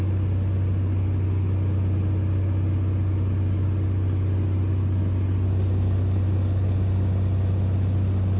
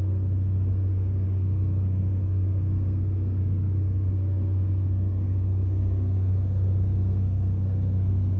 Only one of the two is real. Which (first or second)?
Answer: first